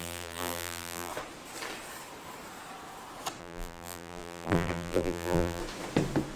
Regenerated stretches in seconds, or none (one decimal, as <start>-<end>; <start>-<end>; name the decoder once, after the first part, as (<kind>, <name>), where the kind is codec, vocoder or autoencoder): 0.0-1.1 (vocoder, BigVGAN v2); 3.4-5.6